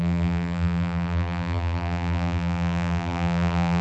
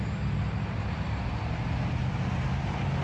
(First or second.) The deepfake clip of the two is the first